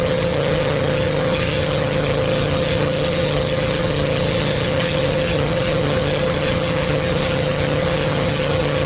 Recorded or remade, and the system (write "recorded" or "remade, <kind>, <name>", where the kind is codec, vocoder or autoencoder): remade, vocoder, HiFi-GAN